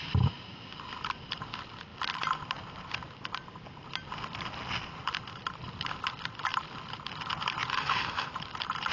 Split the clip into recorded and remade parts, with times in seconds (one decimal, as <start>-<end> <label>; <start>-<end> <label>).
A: 0.0-7.7 recorded; 7.7-8.3 remade; 8.3-8.9 recorded